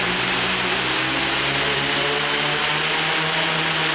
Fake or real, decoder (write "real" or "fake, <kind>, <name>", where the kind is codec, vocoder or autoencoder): real